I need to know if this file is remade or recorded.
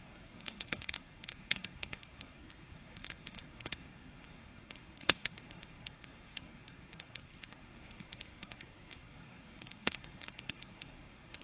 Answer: remade